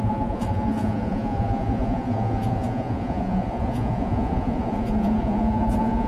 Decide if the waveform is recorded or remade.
remade